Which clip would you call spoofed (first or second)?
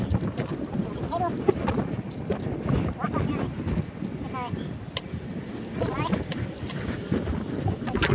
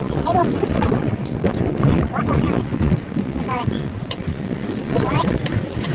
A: second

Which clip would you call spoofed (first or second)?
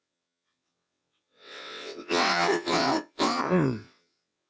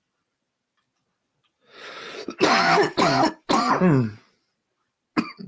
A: first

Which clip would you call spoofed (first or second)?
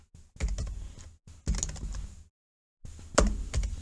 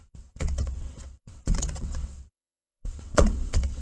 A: second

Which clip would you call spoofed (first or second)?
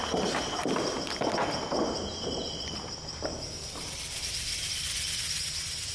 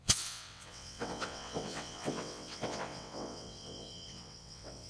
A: second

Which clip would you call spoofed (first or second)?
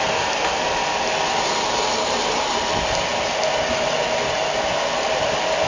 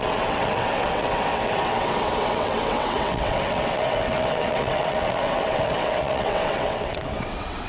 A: second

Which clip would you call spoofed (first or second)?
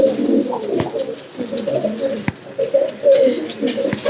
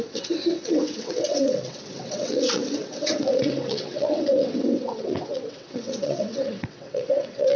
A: second